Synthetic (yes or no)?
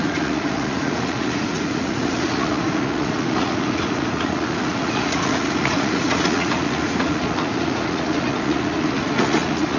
yes